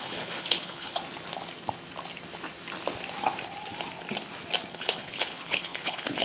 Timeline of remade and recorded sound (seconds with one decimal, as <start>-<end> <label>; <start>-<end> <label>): 0.0-1.0 remade; 1.0-4.7 recorded; 4.7-6.2 remade